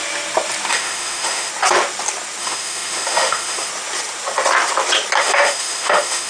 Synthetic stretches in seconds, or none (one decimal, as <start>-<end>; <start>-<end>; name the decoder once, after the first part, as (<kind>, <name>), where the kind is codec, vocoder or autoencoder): 0.7-1.5 (autoencoder, DAC-VAE); 2.4-3.7; 5.2-6.3